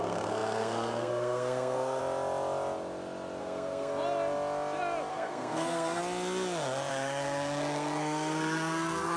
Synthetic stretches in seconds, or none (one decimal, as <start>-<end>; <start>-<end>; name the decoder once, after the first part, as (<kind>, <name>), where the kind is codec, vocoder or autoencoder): 0.0-2.0 (codec, SNAC); 3.4-3.9; 5.1-6.0; 6.9-9.2